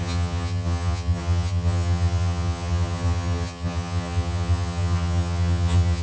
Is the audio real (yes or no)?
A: no